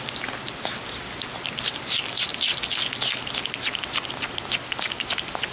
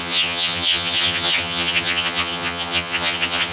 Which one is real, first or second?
first